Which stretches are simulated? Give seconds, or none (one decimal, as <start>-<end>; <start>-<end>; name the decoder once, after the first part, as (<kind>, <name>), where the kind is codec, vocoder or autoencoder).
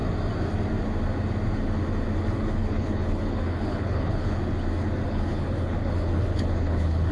2.2-4.4 (codec, HILCodec); 5.1-7.1